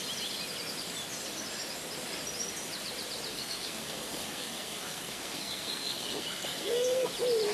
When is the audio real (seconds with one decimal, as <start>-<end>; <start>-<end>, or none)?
0.0-3.3; 7.1-7.5